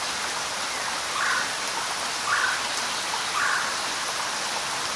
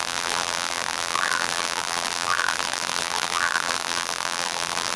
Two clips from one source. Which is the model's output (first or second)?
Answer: second